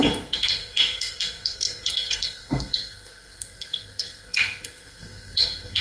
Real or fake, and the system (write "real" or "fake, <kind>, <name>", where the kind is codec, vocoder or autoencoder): fake, codec, SNAC